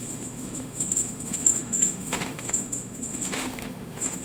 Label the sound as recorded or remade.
remade